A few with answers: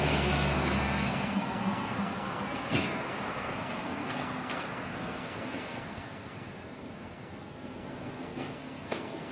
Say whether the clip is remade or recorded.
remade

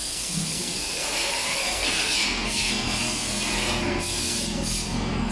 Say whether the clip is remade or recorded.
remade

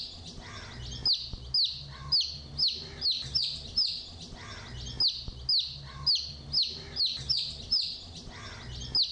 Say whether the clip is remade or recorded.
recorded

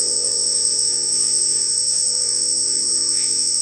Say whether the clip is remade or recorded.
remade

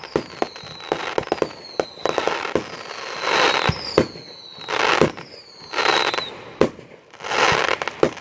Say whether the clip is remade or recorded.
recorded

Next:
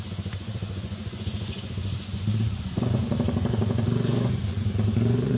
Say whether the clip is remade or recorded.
remade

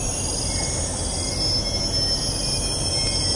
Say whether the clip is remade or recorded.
recorded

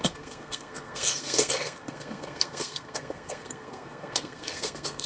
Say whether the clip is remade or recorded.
remade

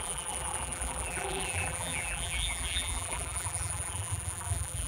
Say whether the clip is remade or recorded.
remade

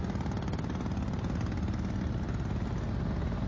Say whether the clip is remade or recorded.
recorded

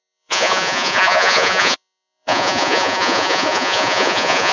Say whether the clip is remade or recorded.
remade